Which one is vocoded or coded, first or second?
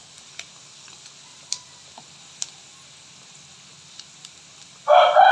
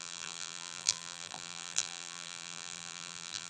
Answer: second